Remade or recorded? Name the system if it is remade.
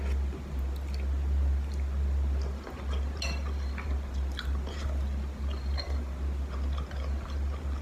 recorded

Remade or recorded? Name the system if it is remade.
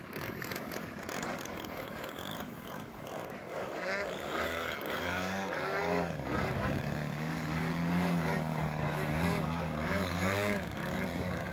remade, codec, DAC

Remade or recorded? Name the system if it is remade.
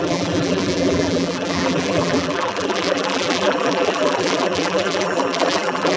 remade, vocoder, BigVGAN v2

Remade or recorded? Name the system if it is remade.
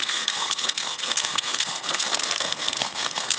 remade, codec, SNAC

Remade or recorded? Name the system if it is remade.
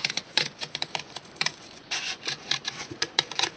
remade, vocoder, Vocos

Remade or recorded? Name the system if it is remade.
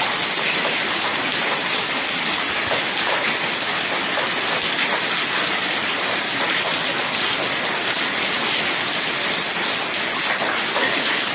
recorded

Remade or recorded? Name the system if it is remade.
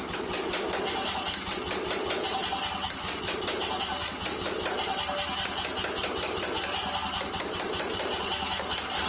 recorded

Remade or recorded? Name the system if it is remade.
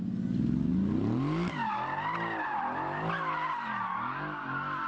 recorded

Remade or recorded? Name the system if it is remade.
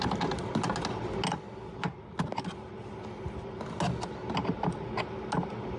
recorded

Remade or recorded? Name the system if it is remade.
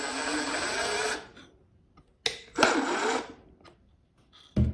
recorded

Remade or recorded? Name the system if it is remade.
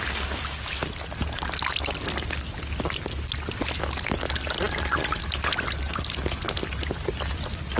recorded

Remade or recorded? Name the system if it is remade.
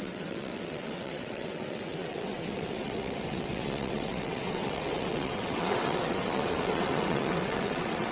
remade, vocoder, WaveNeXt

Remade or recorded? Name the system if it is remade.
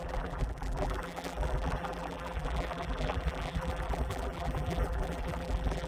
remade, vocoder, BigVGAN v2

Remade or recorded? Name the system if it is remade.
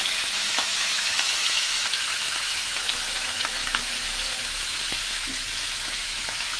remade, autoencoder, DAC-VAE